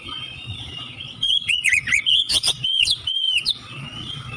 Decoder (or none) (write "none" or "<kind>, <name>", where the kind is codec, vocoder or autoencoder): vocoder, Vocos